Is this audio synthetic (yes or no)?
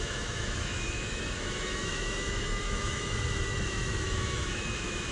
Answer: yes